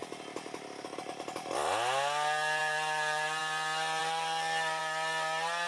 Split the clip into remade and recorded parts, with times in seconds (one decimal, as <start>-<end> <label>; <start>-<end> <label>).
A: 0.0-2.6 recorded; 2.6-3.4 remade; 3.4-4.0 recorded; 4.0-4.8 remade; 4.8-5.7 recorded